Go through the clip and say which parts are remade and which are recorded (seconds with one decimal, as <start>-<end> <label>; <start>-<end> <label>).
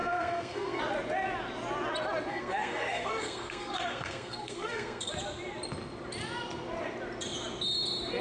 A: 0.0-0.8 remade; 0.8-2.3 recorded; 2.3-5.1 remade; 5.1-8.2 recorded